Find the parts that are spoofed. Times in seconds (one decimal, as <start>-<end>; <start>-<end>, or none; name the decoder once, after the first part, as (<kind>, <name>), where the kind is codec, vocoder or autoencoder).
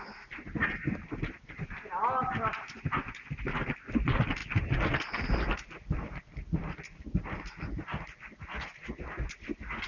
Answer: none